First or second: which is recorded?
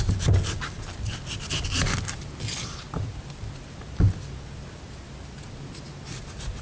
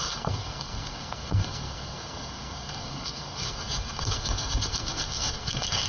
first